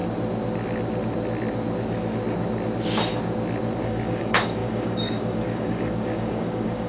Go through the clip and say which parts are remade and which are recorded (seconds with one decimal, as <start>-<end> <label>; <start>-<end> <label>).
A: 0.0-3.8 recorded; 3.8-6.9 remade